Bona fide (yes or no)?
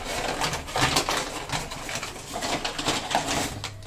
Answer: yes